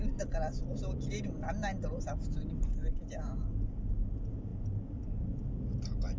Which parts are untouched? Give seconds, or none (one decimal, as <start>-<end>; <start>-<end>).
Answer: 0.0-6.2